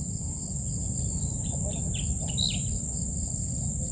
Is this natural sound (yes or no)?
yes